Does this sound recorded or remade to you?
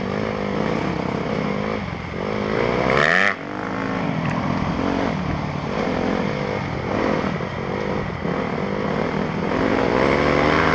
recorded